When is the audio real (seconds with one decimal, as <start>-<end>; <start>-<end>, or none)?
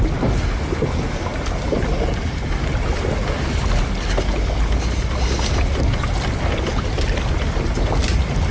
0.0-8.5